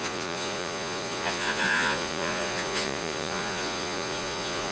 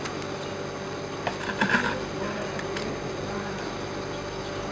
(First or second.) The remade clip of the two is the first